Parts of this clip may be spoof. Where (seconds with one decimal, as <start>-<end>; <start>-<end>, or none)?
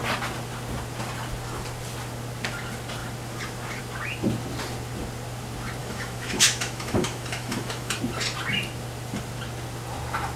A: 5.8-8.0